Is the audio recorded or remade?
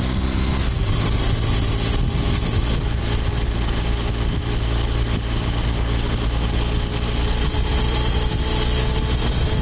recorded